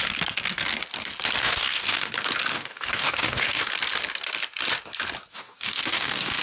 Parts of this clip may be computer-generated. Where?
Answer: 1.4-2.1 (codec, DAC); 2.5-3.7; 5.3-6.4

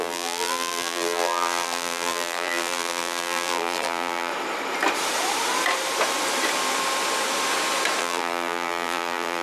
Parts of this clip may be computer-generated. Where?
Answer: 0.0-4.3 (vocoder, BigVGAN v2); 8.0-9.4

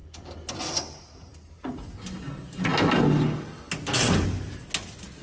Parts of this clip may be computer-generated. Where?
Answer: none

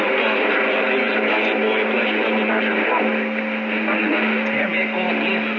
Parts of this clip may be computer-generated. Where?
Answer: none

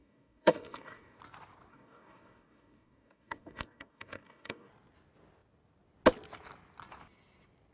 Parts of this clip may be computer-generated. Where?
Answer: 0.0-1.2 (codec, DAC); 1.7-4.7